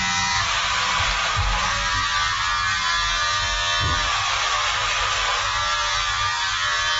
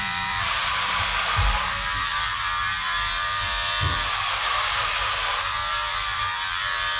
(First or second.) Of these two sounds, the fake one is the second